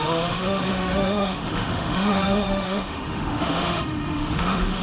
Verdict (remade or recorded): remade